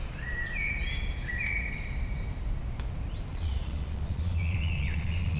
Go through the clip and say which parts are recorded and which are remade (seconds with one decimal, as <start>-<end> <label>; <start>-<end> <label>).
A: 0.0-3.3 recorded; 3.3-5.4 remade